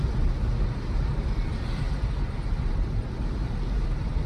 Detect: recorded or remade recorded